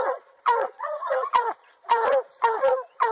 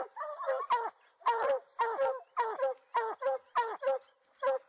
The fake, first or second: first